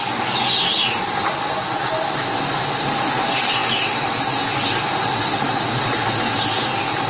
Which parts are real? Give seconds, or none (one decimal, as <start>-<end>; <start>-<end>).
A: 0.0-7.1